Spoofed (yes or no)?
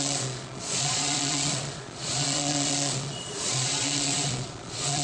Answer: yes